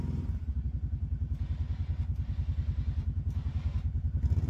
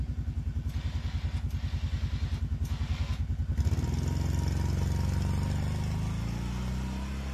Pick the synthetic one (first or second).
first